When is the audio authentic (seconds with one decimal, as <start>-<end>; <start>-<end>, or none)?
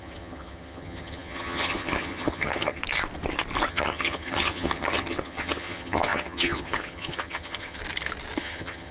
2.8-3.7; 7.8-8.4